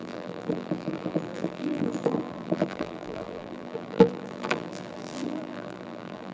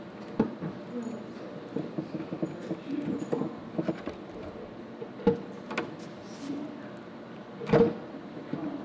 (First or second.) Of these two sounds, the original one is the second